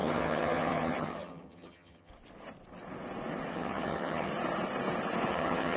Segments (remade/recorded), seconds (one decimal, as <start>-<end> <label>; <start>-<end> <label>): 0.0-2.1 remade; 2.1-3.5 recorded; 3.5-4.3 remade; 4.3-5.3 recorded; 5.3-5.8 remade